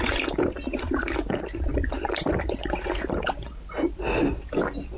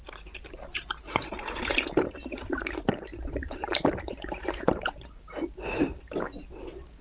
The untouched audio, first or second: first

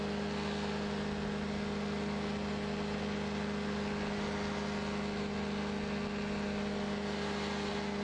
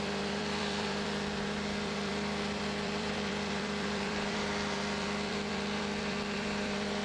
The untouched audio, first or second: first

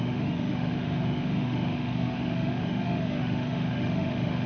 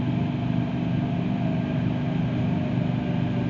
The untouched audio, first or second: second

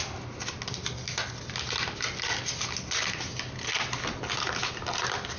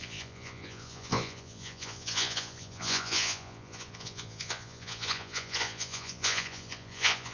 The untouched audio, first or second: first